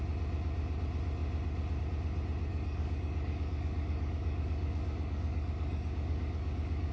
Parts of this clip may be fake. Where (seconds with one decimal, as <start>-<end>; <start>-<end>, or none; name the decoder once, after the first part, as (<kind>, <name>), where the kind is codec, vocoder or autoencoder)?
2.5-6.9 (codec, DAC)